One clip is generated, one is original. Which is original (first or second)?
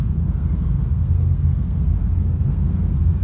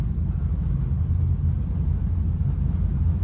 second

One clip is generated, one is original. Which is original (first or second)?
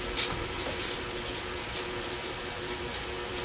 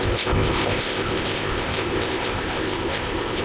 first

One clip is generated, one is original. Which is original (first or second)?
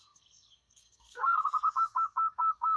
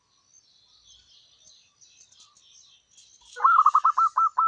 second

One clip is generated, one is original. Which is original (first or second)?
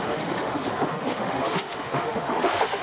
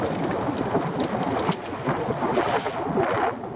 second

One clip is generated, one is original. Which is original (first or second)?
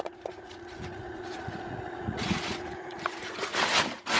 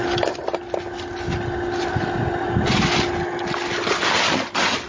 second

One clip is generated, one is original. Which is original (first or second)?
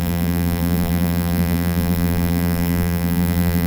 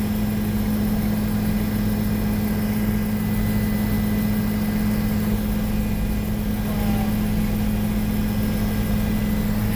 second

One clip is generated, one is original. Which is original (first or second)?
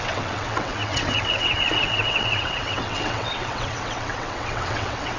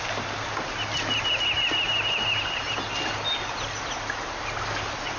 second